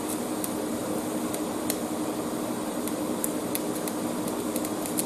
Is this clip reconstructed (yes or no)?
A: no